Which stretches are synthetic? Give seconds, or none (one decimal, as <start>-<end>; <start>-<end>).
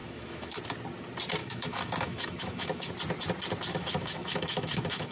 0.0-0.6; 1.4-2.9; 3.7-5.1